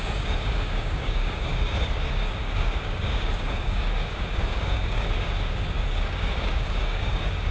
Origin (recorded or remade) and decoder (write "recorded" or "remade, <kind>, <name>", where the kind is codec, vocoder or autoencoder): remade, codec, DAC